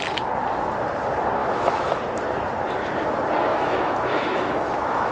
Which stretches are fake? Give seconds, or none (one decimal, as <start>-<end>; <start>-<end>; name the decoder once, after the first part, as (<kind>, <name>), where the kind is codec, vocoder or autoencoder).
1.4-2.0 (autoencoder, DAC-VAE); 3.5-5.1